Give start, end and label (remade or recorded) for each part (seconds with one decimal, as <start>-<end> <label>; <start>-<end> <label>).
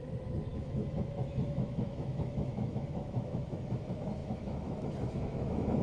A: 0.0-5.8 remade